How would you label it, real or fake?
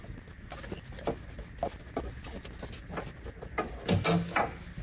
real